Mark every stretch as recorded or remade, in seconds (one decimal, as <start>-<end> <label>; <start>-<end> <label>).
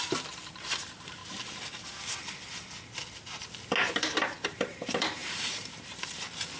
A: 0.0-1.2 remade; 1.2-3.9 recorded; 3.9-6.6 remade